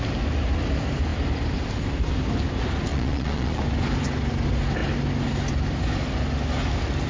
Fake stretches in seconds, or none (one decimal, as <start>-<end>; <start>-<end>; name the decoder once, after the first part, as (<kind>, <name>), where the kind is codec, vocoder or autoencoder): 2.9-3.6 (vocoder, Vocos)